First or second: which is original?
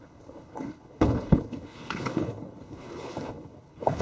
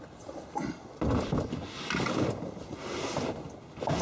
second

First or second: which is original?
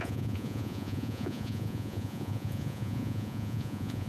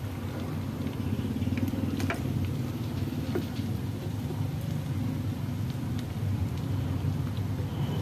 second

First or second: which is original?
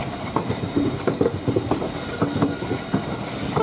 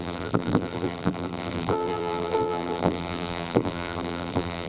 first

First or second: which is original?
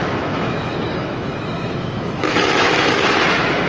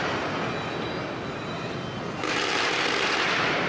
second